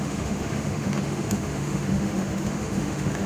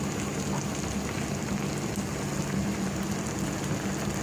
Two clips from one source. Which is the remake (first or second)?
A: first